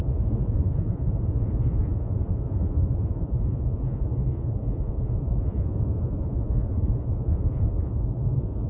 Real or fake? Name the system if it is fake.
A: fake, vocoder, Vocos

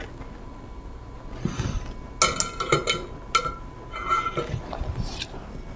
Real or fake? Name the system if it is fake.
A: real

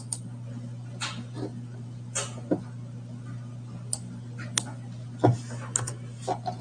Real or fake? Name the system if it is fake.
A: real